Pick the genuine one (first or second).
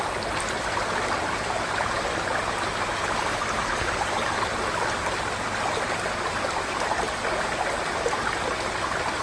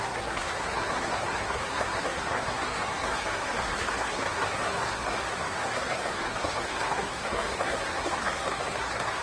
first